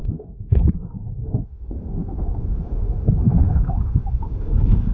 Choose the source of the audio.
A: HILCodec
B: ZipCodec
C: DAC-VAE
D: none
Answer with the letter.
C